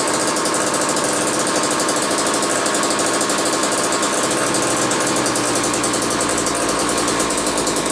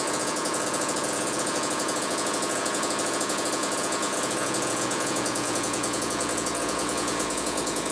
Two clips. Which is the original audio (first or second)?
first